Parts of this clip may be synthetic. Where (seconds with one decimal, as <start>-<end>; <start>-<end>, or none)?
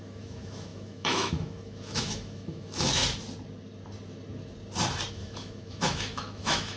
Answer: 0.0-3.0; 5.1-6.8